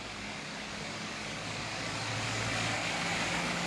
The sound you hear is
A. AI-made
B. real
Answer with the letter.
A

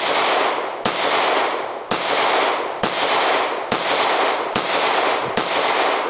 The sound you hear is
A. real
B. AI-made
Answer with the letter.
A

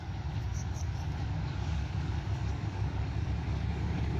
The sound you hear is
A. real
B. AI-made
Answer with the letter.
B